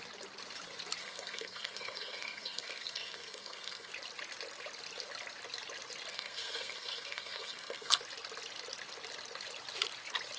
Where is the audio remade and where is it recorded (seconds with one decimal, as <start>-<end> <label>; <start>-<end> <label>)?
0.0-1.0 recorded; 1.0-3.9 remade; 3.9-6.1 recorded; 6.1-8.0 remade; 8.0-10.4 recorded